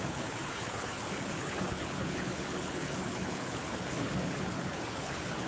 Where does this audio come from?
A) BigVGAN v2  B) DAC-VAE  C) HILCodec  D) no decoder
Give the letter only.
C